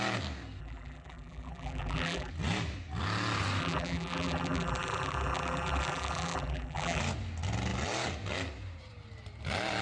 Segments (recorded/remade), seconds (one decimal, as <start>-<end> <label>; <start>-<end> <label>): 0.0-0.6 recorded; 0.6-2.3 remade; 2.3-3.6 recorded; 3.6-7.0 remade; 7.0-9.8 recorded